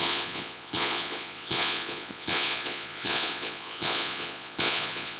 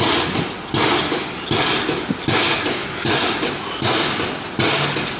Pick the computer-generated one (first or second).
first